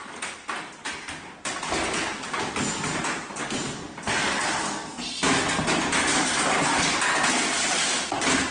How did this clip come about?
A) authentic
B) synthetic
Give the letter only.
A